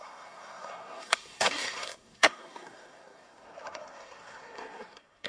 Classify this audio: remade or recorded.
remade